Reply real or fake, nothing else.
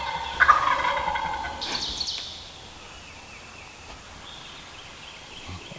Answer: real